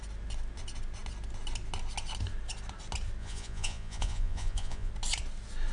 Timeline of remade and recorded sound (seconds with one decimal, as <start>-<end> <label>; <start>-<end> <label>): 0.0-3.2 recorded; 3.2-4.9 remade; 4.9-5.7 recorded